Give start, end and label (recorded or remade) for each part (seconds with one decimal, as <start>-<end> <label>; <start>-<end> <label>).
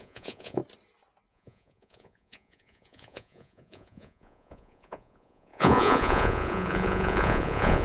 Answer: 0.0-0.6 remade; 0.6-1.3 recorded; 1.3-7.8 remade